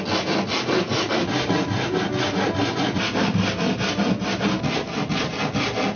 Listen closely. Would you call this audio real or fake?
real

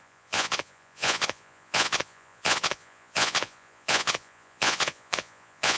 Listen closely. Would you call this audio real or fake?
fake